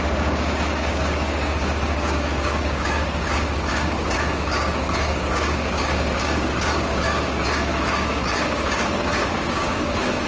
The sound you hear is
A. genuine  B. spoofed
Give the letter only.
B